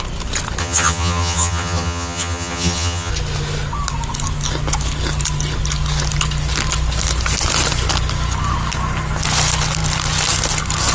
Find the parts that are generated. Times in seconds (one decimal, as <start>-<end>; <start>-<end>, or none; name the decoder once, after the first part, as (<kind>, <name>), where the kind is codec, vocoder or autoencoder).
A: 0.6-3.1 (vocoder, HiFi-GAN)